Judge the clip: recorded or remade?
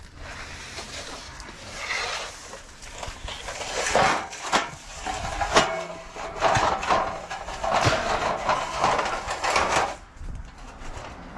recorded